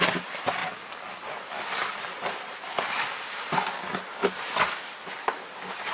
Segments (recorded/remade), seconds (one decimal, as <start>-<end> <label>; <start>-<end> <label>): 0.0-5.9 recorded